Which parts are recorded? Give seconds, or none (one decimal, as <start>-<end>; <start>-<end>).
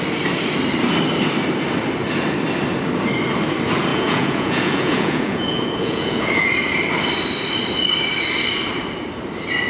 0.0-3.9; 6.5-9.7